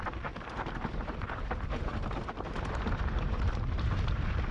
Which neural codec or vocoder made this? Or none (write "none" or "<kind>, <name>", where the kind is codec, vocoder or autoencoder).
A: vocoder, BigVGAN v2